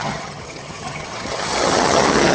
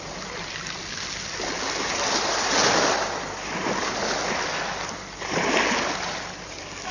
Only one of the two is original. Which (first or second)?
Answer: second